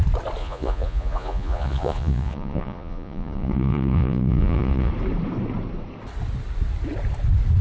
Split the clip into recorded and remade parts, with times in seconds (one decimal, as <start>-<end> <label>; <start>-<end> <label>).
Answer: 0.0-0.4 recorded; 0.4-4.9 remade; 4.9-7.6 recorded